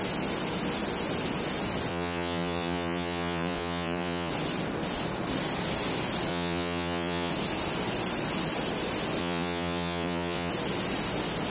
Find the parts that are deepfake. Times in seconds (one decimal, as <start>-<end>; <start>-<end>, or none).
1.9-4.3; 6.3-7.3; 9.2-10.5